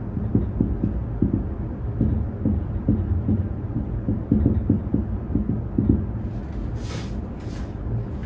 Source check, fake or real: real